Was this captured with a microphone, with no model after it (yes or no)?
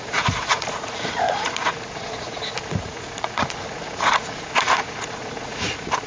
no